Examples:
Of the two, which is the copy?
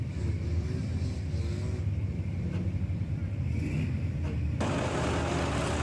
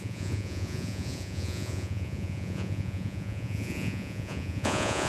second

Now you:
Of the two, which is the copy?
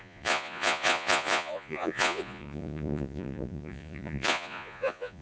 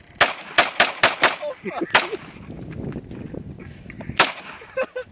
first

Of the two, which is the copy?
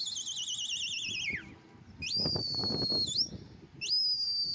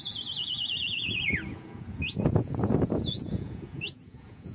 second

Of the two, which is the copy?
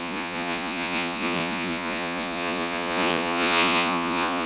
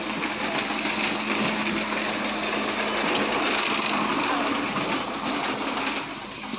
first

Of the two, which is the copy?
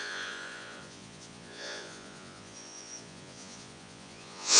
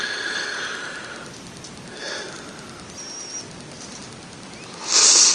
first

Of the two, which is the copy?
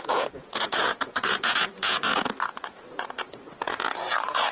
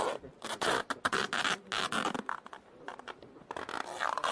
first